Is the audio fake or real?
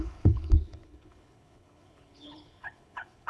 fake